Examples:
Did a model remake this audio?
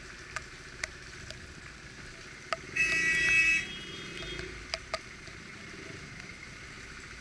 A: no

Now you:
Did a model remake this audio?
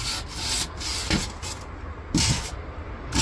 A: no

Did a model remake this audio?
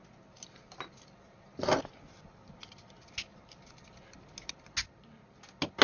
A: no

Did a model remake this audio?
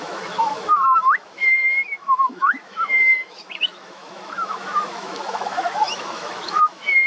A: yes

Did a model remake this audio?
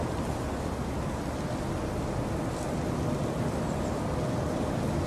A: no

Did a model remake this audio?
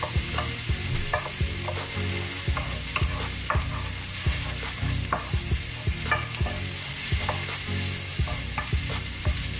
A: no